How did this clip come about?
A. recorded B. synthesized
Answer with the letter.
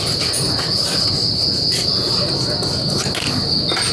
A